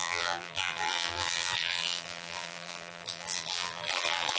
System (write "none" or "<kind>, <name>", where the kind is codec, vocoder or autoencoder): vocoder, BigVGAN v2